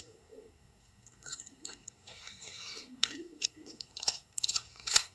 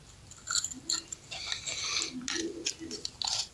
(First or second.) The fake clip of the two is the first